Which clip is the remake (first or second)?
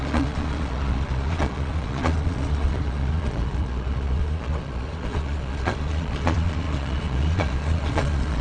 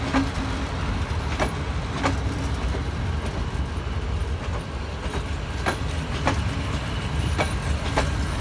first